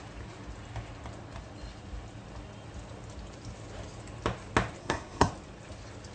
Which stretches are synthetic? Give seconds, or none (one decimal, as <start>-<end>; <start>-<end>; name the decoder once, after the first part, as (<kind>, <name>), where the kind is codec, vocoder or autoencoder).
4.8-5.3 (codec, SNAC)